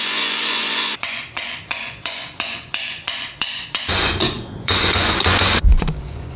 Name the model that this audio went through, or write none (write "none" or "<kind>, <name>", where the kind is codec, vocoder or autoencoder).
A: vocoder, Vocos